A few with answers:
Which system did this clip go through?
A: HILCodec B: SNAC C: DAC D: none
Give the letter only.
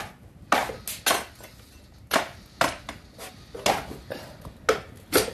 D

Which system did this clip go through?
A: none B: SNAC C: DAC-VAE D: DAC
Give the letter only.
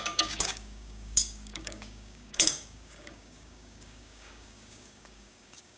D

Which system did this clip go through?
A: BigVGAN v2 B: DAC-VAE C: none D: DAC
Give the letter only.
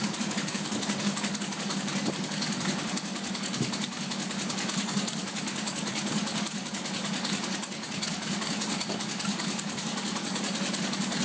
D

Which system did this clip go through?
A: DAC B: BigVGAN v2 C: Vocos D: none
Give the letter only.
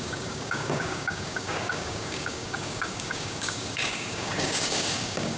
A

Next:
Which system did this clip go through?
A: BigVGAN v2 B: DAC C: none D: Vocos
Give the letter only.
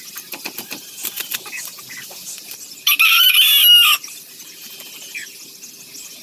C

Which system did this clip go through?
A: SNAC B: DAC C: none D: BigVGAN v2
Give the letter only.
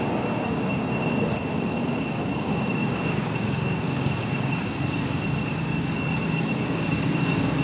B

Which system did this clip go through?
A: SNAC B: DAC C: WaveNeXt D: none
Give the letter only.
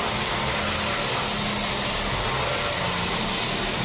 D